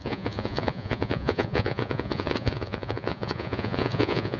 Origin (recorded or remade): remade